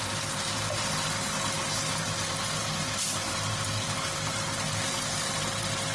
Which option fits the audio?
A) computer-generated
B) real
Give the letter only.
B